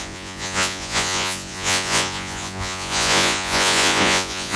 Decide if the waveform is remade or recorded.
remade